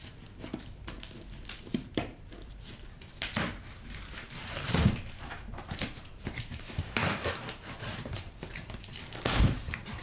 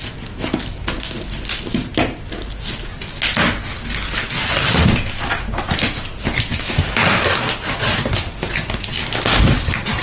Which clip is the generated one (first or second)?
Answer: first